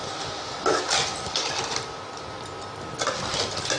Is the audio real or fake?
real